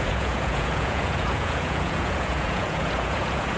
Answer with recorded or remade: remade